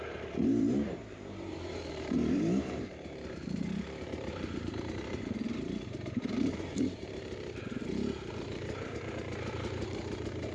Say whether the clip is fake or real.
fake